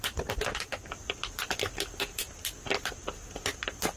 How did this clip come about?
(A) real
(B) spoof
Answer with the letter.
A